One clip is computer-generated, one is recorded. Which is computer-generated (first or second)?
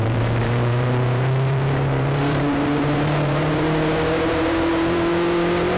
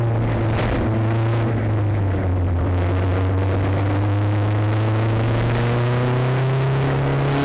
first